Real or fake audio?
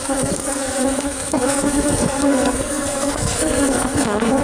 fake